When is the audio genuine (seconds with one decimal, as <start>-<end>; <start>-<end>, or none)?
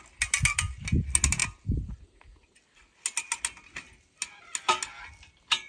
0.0-5.7